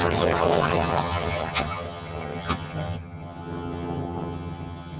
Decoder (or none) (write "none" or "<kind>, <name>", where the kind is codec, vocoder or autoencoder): vocoder, HiFi-GAN